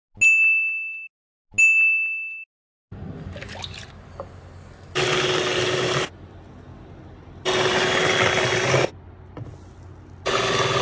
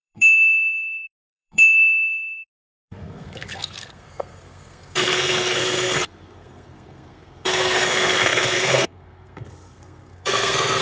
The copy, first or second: second